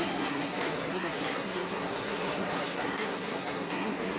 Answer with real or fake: fake